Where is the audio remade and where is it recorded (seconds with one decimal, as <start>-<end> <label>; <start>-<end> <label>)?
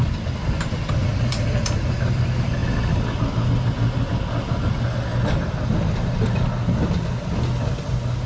0.0-8.3 recorded